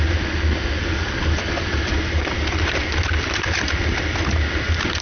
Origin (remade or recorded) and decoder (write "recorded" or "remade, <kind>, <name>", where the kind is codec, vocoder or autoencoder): remade, vocoder, BigVGAN v2